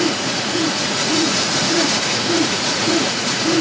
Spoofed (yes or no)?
yes